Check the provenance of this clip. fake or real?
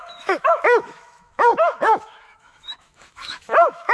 fake